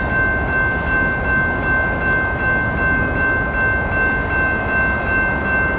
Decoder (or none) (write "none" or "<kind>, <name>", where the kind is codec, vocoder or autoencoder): none